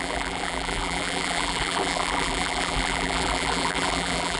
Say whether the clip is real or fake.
fake